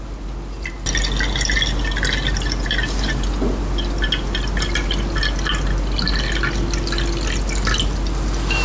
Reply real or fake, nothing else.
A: real